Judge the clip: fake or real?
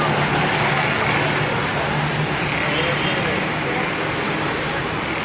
real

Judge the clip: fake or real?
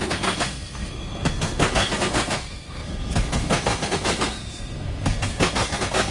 fake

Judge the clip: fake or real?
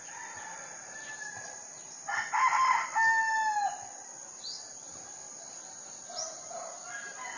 real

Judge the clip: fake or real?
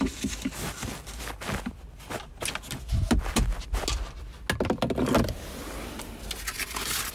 real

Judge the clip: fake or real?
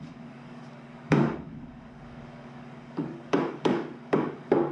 fake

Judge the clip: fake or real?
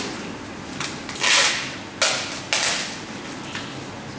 real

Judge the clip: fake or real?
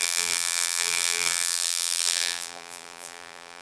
fake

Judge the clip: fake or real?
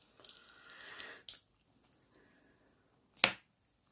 real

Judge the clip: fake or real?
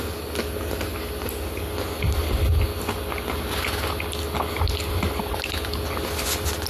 real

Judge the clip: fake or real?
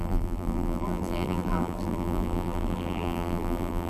fake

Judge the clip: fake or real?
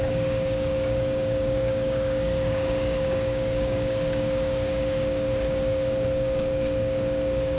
fake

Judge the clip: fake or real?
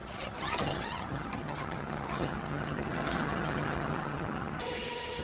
fake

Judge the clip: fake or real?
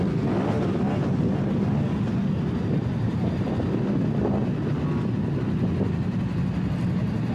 real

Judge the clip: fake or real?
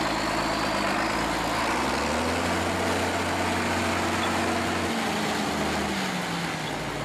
real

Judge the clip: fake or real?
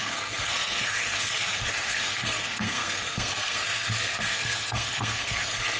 fake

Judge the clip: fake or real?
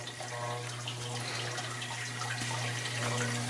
real